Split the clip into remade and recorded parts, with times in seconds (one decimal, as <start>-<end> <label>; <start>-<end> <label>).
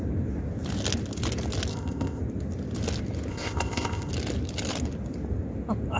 0.0-1.7 recorded; 1.7-2.2 remade; 2.2-3.3 recorded; 3.3-4.1 remade; 4.1-6.0 recorded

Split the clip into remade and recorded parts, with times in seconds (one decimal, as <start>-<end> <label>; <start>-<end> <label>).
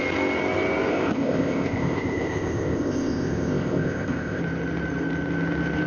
0.0-0.9 recorded; 0.9-4.4 remade; 4.4-5.9 recorded